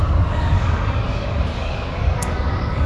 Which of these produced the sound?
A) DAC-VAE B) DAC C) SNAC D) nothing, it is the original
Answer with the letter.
B